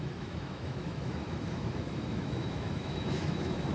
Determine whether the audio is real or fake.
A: fake